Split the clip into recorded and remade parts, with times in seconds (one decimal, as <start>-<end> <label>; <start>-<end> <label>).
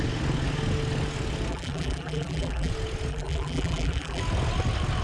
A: 0.0-1.5 recorded; 1.5-2.7 remade; 2.7-3.1 recorded; 3.1-4.2 remade; 4.2-5.0 recorded